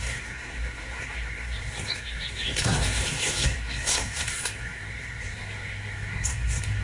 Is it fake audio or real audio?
fake